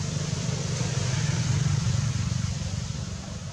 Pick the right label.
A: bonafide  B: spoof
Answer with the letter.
A